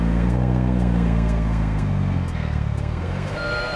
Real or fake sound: fake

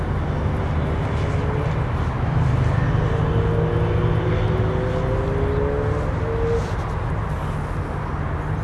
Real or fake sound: real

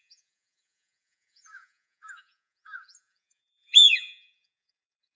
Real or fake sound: fake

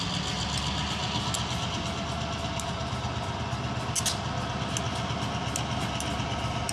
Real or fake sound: real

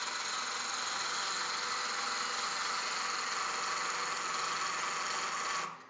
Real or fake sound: real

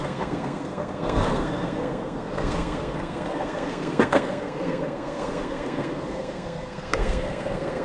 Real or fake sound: fake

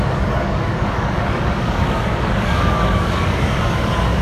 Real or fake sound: fake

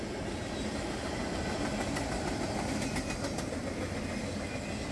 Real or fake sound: real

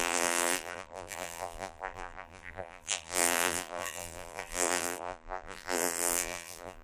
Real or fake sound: fake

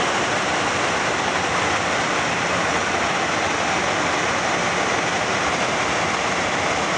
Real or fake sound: real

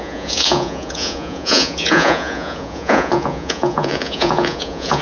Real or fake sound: fake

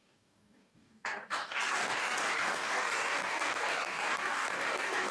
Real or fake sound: fake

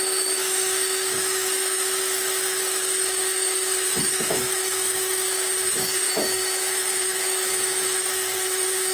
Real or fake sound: fake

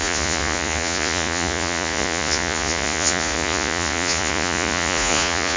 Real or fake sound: fake